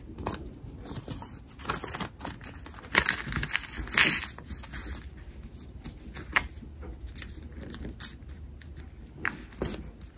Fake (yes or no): no